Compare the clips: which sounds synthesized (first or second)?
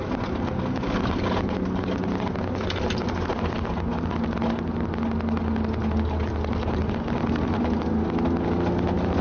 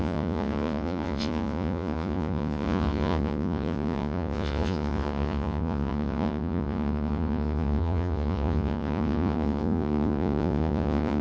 second